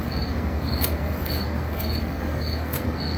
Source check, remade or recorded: remade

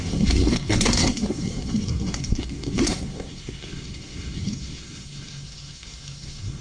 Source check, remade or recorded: remade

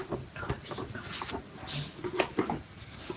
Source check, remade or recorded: recorded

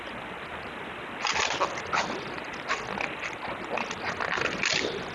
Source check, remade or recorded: recorded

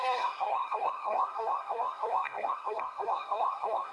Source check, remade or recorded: remade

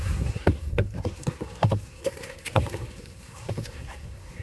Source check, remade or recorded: remade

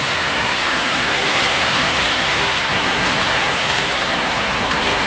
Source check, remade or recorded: remade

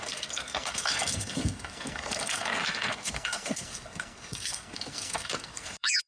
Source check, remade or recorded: remade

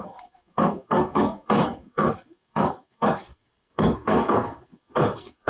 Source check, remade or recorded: remade